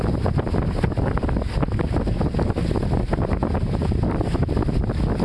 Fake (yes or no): no